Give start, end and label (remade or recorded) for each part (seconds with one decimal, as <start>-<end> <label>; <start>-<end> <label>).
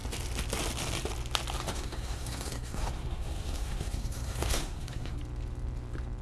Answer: 0.0-1.7 recorded; 1.7-5.2 remade; 5.2-6.2 recorded